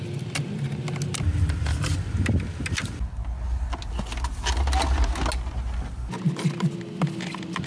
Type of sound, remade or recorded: recorded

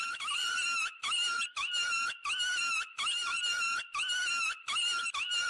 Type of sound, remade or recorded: recorded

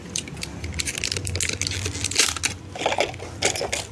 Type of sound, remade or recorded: recorded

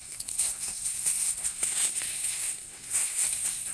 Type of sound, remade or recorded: remade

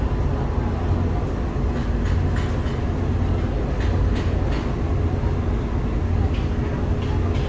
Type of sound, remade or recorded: recorded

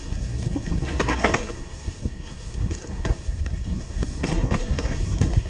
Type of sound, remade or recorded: remade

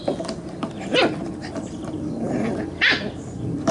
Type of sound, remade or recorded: recorded